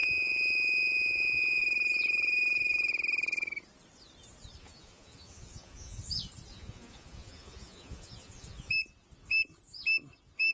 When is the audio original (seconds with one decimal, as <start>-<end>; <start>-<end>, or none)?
1.6-4.6; 6.0-6.5; 8.7-10.5